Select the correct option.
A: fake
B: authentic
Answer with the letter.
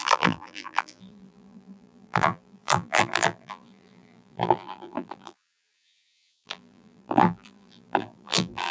A